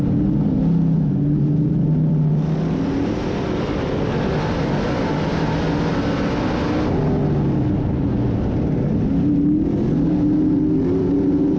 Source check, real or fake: real